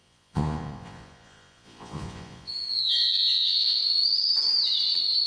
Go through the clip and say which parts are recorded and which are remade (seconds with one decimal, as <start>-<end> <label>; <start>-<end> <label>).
0.0-3.8 remade; 3.8-5.3 recorded